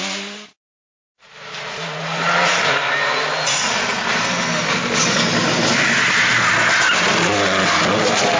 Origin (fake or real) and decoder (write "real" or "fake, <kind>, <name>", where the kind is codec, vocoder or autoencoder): real